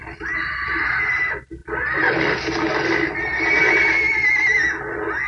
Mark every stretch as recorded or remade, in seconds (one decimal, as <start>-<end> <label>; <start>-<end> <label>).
0.0-5.3 recorded